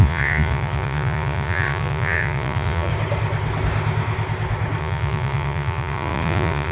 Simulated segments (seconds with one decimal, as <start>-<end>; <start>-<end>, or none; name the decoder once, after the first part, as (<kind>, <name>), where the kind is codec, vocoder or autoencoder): 0.0-2.9 (vocoder, Vocos); 4.8-6.7